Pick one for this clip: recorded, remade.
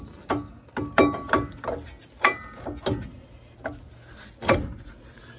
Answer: recorded